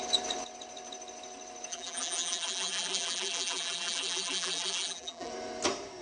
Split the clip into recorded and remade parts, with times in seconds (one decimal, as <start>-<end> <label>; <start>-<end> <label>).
0.0-1.7 recorded; 1.7-5.3 remade; 5.3-6.0 recorded